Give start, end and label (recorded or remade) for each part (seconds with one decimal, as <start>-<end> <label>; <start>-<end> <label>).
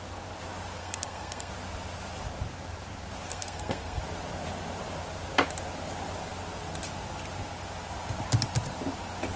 0.0-0.8 recorded; 0.8-1.5 remade; 1.5-3.3 recorded; 3.3-4.0 remade; 4.0-9.4 recorded